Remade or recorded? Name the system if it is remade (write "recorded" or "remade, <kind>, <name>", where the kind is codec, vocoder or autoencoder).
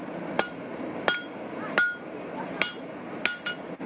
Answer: recorded